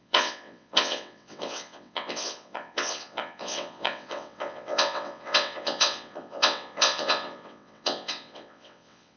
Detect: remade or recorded remade